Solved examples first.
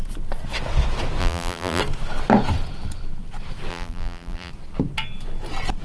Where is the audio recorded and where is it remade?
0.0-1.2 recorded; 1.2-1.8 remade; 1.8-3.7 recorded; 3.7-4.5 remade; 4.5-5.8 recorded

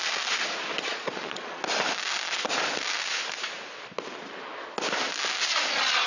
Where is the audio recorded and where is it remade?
0.0-0.9 recorded; 0.9-1.6 remade; 1.6-6.1 recorded